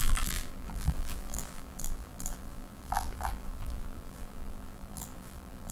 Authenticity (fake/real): fake